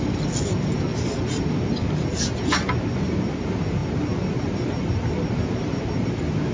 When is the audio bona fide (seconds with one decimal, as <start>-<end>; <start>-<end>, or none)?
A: 0.0-6.5